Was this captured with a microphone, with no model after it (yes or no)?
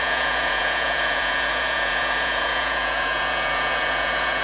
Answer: no